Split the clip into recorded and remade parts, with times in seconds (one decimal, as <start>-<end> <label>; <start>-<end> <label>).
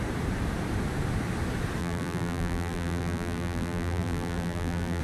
0.0-1.8 recorded; 1.8-5.0 remade